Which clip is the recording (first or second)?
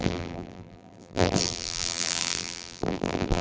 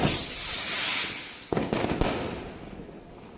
second